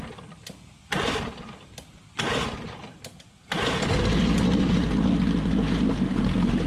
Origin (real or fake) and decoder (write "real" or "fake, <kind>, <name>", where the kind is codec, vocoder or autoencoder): real